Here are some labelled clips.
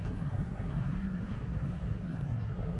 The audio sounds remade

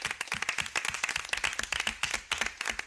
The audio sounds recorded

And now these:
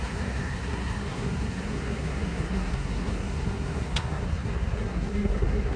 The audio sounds remade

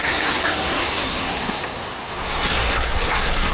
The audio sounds remade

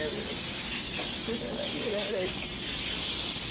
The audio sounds recorded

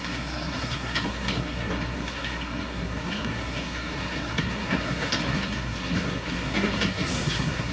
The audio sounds remade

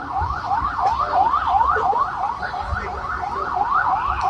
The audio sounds recorded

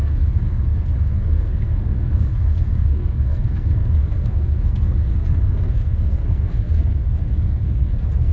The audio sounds remade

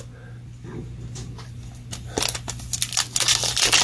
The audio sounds recorded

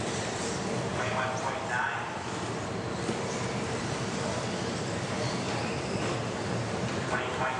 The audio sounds recorded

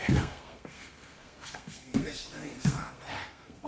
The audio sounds remade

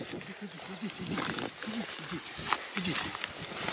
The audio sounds recorded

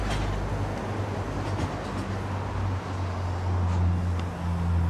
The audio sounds recorded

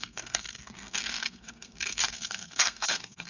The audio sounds remade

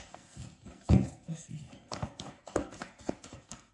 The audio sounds remade